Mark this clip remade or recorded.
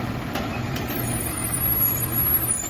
remade